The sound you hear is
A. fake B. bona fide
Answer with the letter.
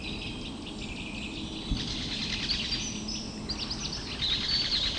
B